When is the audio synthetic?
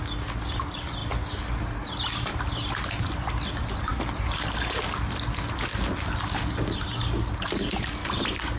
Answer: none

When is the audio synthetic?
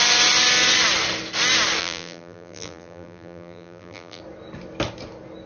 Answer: 1.8-4.2 (vocoder, BigVGAN v2)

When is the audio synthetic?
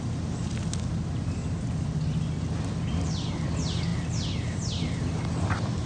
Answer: none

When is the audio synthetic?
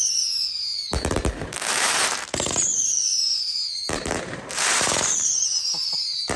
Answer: 0.0-6.4 (vocoder, BigVGAN v2)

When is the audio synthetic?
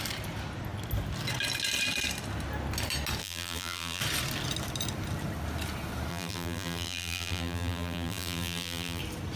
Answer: 3.2-4.0 (vocoder, BigVGAN v2); 6.1-9.0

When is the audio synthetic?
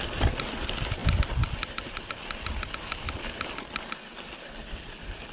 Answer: none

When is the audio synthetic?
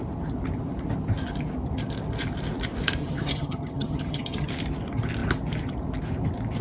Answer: 3.0-4.5 (vocoder, HiFi-GAN)